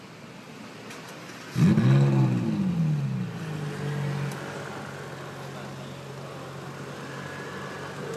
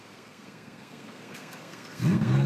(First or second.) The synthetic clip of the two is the second